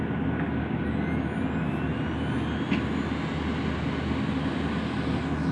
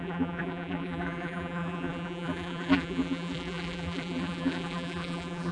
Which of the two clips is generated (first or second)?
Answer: second